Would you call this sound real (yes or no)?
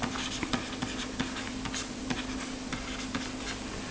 yes